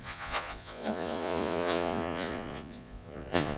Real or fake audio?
fake